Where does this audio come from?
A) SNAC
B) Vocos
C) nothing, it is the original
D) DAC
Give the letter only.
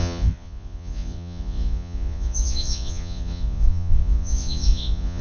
B